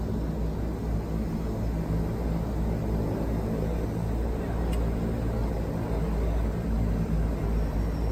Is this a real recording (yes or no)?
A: yes